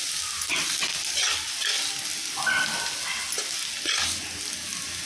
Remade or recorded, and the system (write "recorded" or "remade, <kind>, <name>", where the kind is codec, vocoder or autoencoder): recorded